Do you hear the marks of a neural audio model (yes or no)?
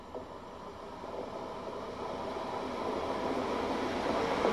no